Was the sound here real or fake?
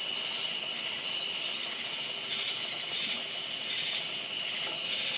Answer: real